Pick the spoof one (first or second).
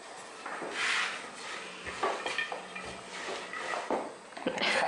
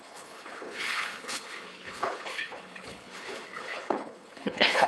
second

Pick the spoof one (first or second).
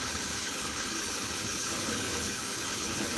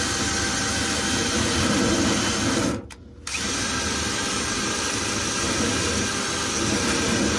first